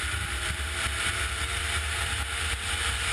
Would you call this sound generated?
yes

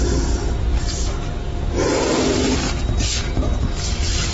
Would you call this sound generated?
no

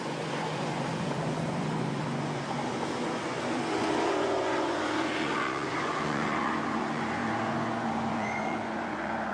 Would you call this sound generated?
yes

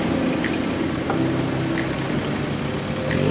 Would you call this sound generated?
no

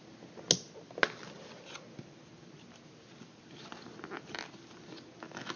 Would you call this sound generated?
no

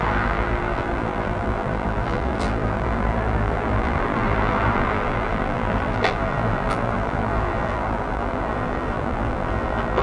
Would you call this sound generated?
yes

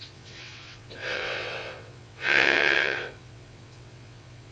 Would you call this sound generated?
yes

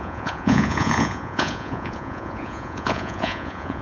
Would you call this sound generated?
yes